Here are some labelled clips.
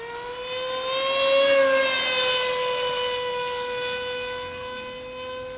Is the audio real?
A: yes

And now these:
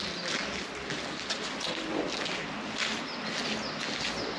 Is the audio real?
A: yes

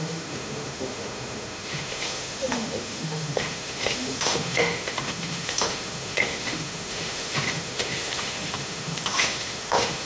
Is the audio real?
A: no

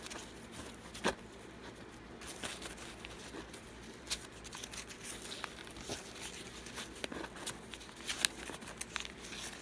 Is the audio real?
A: yes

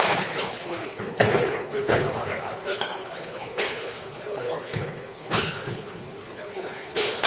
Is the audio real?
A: no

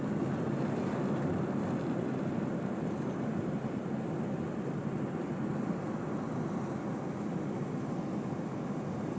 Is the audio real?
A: yes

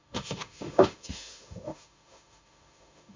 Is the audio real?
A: no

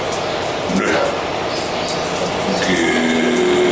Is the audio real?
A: yes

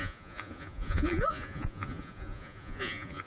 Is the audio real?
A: no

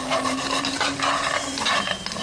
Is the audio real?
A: yes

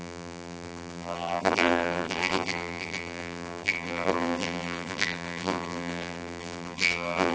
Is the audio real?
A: no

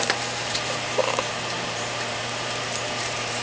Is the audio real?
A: no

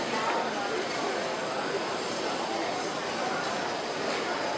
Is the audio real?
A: yes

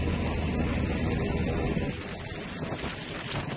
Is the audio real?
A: yes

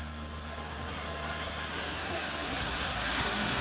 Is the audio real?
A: no